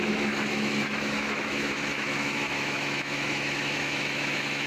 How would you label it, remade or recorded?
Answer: remade